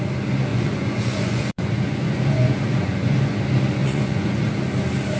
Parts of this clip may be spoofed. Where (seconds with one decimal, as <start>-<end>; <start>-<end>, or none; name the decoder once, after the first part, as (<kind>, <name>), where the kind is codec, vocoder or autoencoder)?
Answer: 0.5-3.4 (vocoder, Vocos); 3.8-4.5